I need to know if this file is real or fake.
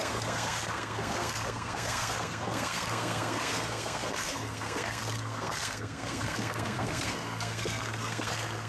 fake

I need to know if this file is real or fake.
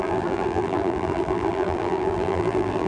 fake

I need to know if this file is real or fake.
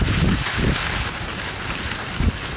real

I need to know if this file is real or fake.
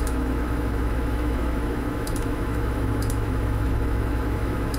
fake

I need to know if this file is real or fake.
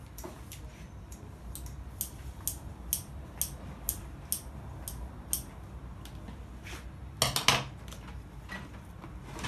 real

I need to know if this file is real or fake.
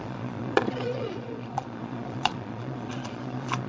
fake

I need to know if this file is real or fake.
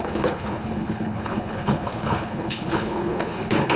fake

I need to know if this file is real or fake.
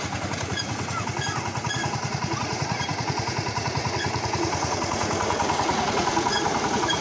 fake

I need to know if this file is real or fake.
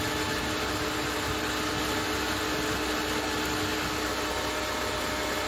real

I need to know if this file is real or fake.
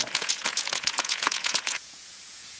fake